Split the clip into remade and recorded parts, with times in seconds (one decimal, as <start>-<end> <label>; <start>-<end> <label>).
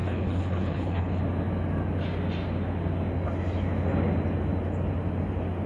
0.0-1.2 remade; 1.2-5.7 recorded